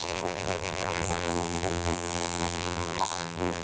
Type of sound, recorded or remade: remade